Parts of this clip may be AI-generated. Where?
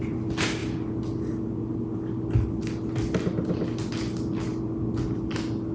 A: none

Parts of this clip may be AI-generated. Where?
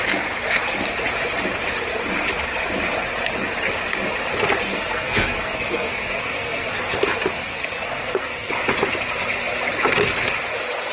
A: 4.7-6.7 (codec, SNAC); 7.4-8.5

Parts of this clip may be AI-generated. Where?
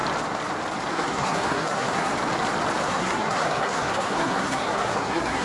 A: 0.9-2.1 (codec, SNAC); 2.8-5.4